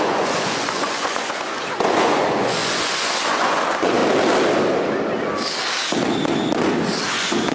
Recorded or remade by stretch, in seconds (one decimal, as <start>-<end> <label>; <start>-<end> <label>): 0.0-4.0 remade; 4.0-7.1 recorded; 7.1-7.5 remade